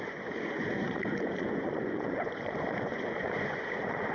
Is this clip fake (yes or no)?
yes